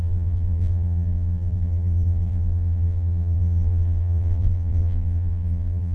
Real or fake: fake